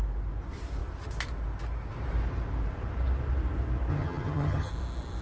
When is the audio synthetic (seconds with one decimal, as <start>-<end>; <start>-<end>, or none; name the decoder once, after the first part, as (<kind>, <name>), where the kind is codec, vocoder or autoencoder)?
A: 3.9-4.7 (vocoder, HiFi-GAN)